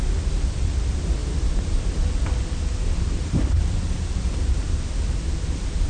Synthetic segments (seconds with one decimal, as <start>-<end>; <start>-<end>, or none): none